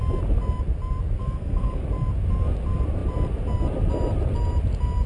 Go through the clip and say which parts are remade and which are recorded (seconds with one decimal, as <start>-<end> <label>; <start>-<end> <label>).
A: 0.0-1.2 recorded; 1.2-1.8 remade; 1.8-5.1 recorded